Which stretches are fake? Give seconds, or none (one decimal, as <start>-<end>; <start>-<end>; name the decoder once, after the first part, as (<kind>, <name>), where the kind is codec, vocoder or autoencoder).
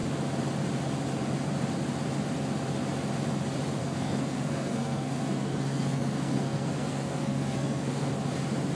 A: 3.8-8.1 (codec, SNAC)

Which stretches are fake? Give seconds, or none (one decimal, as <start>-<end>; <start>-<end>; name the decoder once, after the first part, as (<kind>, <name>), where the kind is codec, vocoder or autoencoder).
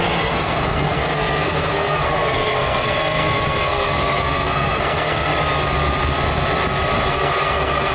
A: 0.0-5.3 (codec, SNAC); 7.1-7.9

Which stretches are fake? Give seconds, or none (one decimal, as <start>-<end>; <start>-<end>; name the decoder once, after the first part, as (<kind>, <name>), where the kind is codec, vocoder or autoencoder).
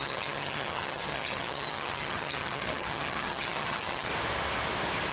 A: 0.0-4.1 (vocoder, HiFi-GAN)